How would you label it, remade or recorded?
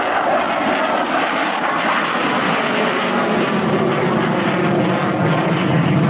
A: recorded